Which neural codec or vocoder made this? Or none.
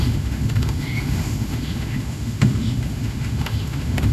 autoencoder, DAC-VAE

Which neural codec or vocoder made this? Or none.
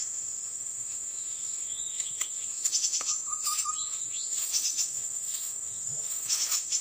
autoencoder, DAC-VAE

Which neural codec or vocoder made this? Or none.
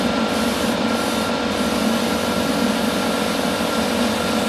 none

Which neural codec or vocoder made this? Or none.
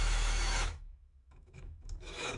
autoencoder, DAC-VAE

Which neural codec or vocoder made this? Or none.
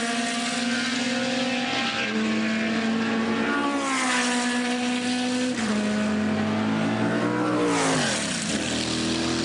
none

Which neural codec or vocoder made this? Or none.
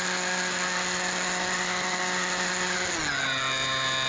none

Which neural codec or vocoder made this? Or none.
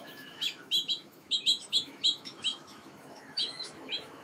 autoencoder, DAC-VAE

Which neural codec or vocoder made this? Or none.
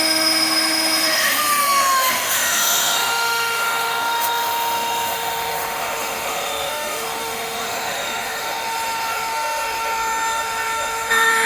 autoencoder, DAC-VAE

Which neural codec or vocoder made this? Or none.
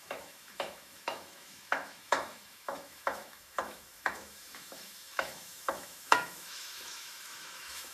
autoencoder, DAC-VAE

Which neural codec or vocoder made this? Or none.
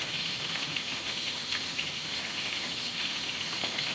autoencoder, DAC-VAE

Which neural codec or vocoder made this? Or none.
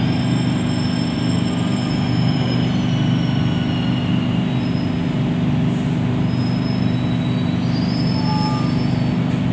none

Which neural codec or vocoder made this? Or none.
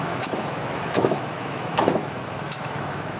autoencoder, DAC-VAE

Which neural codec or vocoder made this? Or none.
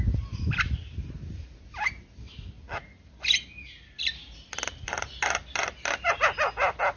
none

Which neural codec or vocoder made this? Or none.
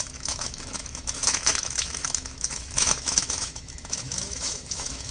autoencoder, DAC-VAE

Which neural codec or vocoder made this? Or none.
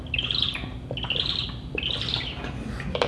none